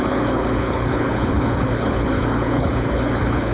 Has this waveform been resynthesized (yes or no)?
yes